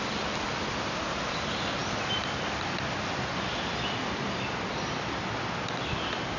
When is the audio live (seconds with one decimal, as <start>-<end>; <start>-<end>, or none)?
0.0-6.4